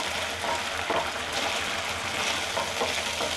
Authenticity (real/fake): real